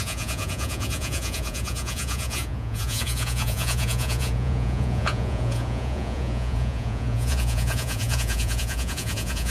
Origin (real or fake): fake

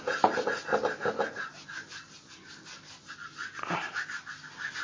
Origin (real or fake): real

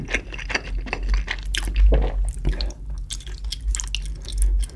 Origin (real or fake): real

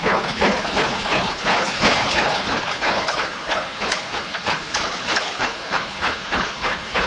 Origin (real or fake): fake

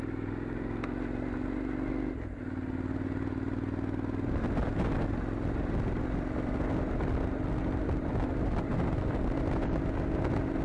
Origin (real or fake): real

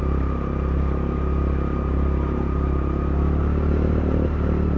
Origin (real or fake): fake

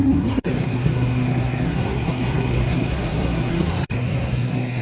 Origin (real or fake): fake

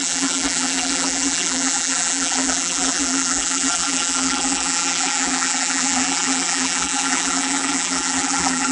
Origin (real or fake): fake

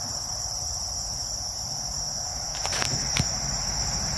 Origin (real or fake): fake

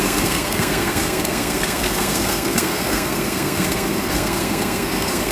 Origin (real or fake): fake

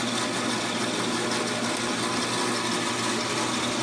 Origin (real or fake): real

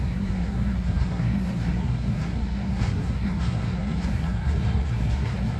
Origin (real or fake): fake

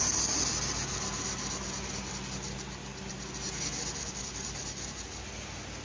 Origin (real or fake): real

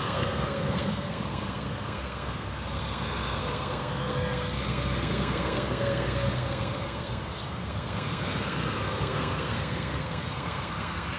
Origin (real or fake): fake